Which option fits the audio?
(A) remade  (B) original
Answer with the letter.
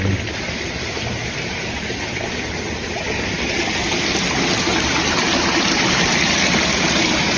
B